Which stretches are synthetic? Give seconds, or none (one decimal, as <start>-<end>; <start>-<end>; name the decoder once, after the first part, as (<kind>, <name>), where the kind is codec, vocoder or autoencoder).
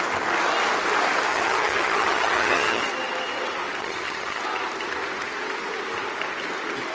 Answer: 1.3-2.8 (vocoder, HiFi-GAN); 3.8-4.4